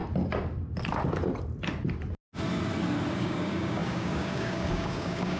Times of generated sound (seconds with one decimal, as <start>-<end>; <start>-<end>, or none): 3.2-5.4